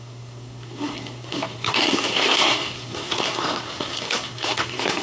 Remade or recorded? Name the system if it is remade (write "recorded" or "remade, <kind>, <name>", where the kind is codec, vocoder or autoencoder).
remade, codec, SNAC